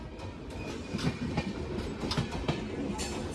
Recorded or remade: recorded